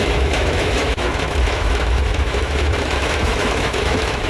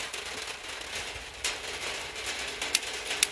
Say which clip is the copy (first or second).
first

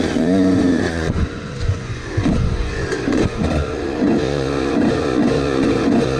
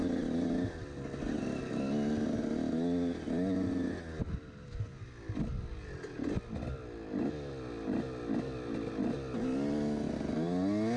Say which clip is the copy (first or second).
first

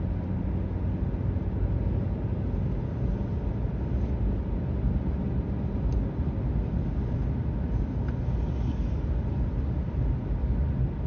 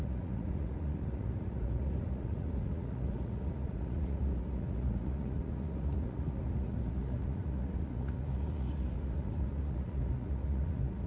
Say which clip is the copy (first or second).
second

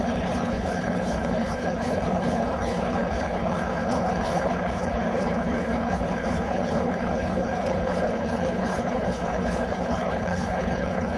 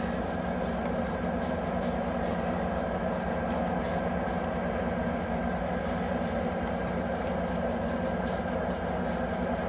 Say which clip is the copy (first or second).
first